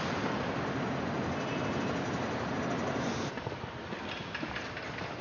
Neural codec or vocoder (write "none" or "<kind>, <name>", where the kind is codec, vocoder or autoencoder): none